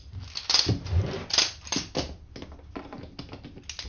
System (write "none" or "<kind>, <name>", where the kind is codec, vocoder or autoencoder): none